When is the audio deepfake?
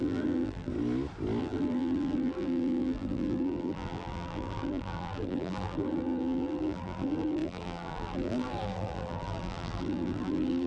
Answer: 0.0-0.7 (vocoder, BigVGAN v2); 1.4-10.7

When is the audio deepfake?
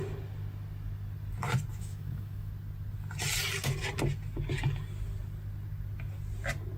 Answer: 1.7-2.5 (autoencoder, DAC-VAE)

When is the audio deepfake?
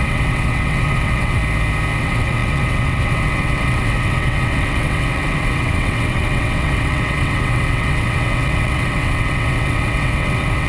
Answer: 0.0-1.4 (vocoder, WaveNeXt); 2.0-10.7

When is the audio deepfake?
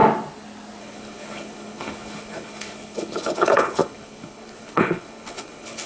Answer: 0.8-5.9 (codec, HILCodec)